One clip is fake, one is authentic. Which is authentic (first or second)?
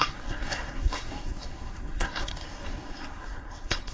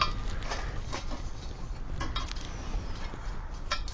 second